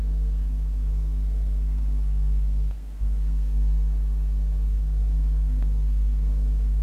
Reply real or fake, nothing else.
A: fake